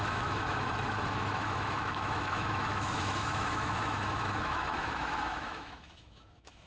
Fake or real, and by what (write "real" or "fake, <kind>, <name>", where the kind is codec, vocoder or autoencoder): fake, autoencoder, DAC-VAE